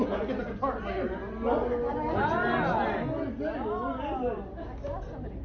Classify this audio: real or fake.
real